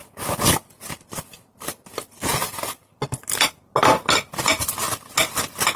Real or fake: real